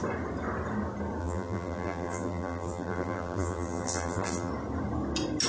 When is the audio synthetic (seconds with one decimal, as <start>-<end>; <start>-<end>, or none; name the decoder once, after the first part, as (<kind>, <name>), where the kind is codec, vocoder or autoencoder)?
1.2-4.5 (vocoder, BigVGAN v2)